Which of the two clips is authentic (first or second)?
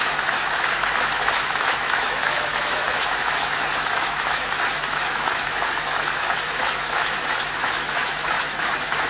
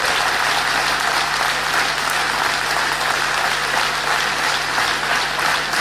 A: second